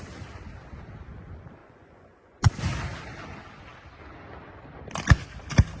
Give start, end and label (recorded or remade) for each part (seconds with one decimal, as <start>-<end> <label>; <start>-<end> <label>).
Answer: 0.0-1.6 recorded; 1.6-2.5 remade; 2.5-5.8 recorded